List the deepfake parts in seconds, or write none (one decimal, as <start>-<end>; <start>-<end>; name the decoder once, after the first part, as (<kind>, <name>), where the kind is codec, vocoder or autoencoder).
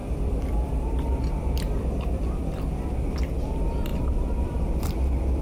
0.0-1.8 (vocoder, BigVGAN v2); 3.9-4.9